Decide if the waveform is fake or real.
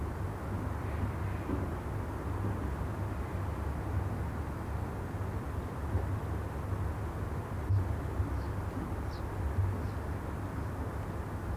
real